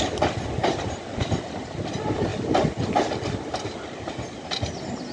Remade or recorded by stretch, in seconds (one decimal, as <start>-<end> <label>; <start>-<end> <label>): 0.0-5.1 recorded